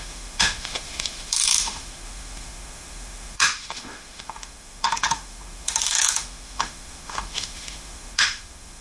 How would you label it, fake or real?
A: fake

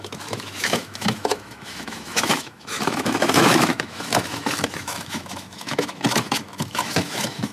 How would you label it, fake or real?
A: fake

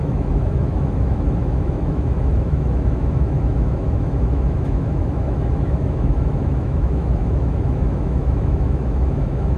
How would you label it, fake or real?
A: fake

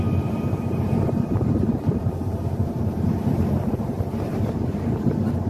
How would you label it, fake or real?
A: fake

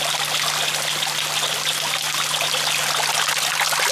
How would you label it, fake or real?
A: real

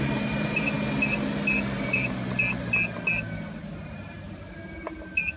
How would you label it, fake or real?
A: real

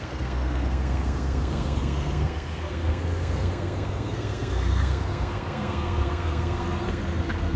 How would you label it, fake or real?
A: fake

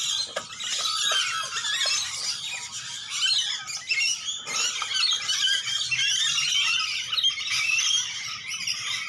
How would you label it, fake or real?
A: real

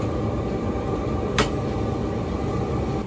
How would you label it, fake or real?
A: real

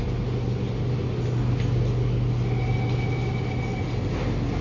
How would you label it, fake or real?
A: real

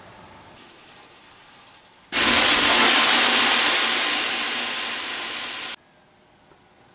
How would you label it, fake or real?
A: real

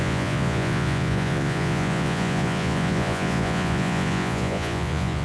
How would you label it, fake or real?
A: fake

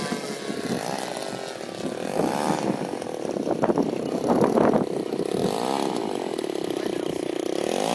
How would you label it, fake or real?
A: real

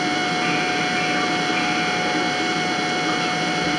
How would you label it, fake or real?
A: real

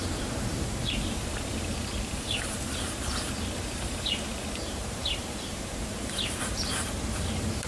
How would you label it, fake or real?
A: fake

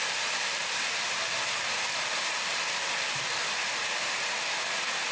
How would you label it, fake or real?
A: fake